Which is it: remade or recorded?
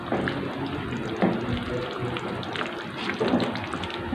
remade